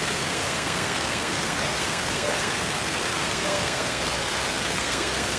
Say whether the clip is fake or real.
fake